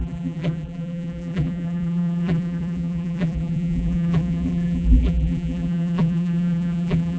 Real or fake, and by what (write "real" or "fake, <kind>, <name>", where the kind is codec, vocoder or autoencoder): fake, vocoder, BigVGAN v2